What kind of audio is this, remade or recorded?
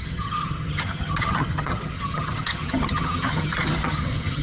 remade